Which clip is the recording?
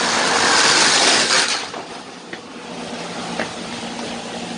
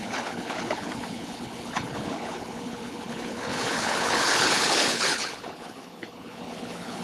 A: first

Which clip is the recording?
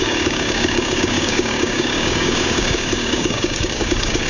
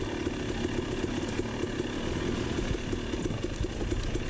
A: second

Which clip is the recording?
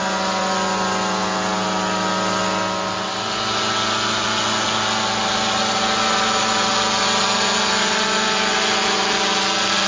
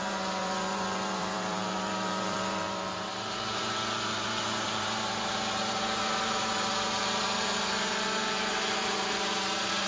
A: first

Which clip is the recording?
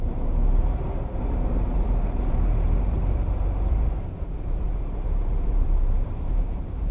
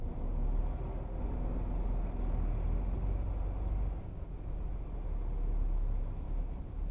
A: second